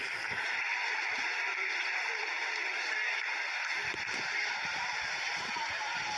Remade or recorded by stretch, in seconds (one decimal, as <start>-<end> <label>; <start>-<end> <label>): 0.0-2.4 remade; 2.4-3.9 recorded; 3.9-6.2 remade